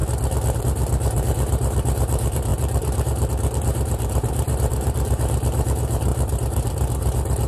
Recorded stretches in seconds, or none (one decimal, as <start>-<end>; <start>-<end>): 0.0-0.6

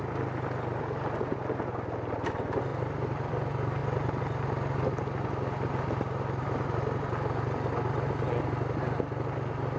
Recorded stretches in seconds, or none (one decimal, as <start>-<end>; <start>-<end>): 0.0-9.8

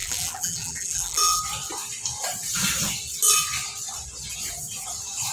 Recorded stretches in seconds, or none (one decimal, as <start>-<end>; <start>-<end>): 1.4-5.3